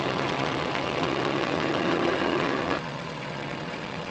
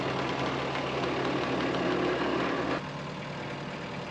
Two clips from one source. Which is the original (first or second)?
second